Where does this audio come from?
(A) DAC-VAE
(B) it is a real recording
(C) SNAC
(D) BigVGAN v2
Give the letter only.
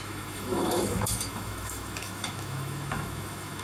A